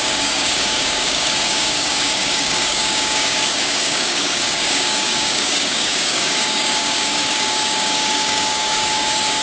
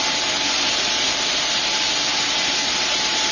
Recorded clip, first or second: second